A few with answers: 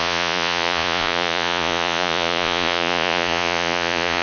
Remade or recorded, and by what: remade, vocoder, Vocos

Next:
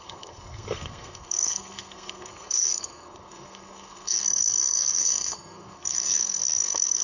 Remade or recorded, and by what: remade, codec, SNAC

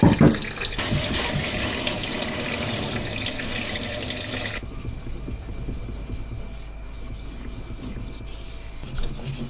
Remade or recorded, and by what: recorded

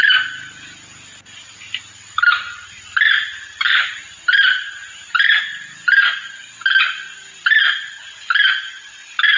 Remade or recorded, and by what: recorded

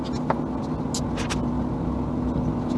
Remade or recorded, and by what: recorded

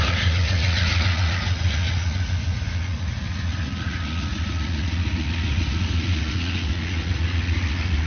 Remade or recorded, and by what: remade, vocoder, Vocos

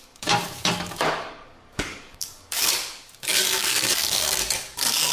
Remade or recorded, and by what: remade, codec, DAC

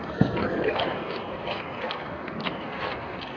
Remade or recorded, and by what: remade, codec, SNAC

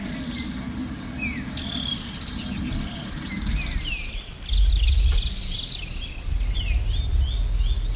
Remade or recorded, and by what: recorded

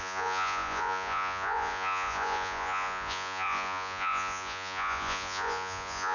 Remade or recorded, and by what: remade, vocoder, Vocos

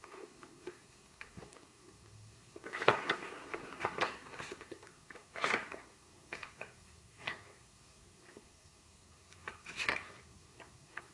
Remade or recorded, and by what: remade, codec, SNAC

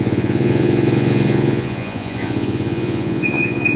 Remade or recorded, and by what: remade, vocoder, Vocos